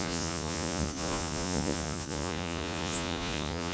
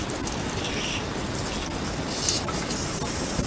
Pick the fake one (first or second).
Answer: first